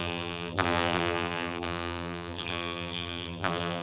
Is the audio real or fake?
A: fake